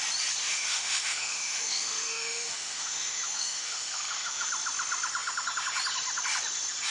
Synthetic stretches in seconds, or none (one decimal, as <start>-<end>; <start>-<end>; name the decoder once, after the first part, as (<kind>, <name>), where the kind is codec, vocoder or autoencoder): 0.4-4.5 (autoencoder, DAC-VAE)